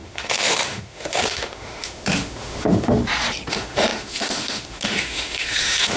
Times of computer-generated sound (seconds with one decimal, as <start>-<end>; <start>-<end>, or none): 0.0-3.0; 3.5-6.0